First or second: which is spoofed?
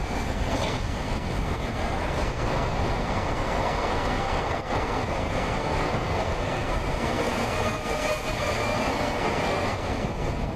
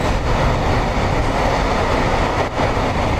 first